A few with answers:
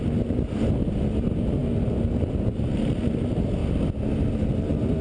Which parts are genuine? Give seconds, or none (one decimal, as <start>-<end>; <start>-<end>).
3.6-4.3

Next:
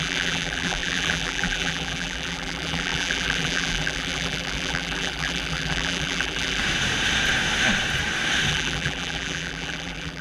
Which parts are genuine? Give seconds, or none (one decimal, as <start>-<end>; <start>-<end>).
6.6-8.5

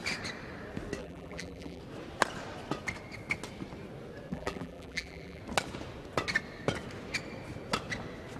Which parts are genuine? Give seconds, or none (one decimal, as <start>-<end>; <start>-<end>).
0.0-1.0; 1.8-4.3; 5.4-8.4

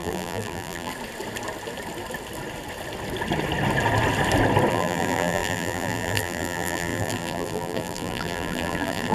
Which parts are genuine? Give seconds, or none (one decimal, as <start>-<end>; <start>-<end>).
0.9-4.7

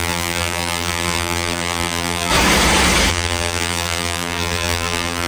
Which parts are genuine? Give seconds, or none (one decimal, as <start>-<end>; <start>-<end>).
2.3-3.1

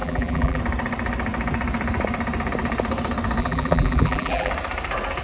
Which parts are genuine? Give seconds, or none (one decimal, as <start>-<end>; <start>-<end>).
0.6-3.4; 4.5-5.2

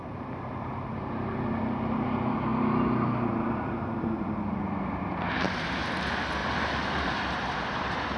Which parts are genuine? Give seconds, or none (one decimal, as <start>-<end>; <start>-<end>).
0.9-6.4